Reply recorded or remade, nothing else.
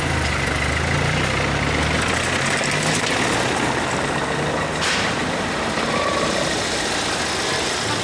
recorded